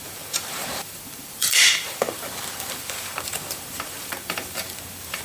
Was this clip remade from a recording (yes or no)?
yes